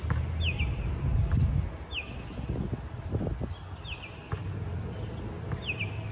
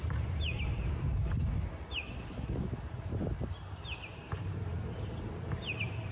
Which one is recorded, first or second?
first